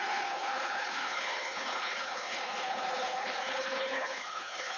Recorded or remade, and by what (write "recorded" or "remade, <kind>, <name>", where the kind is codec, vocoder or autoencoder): remade, codec, HILCodec